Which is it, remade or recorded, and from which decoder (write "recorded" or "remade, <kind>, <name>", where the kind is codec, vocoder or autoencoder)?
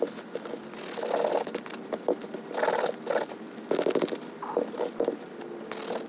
recorded